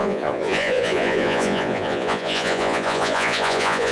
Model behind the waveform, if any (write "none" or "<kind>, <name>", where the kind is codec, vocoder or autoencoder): vocoder, Vocos